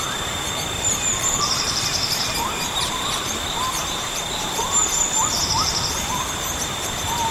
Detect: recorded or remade remade